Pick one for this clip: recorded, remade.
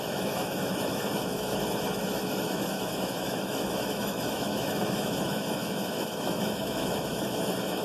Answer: remade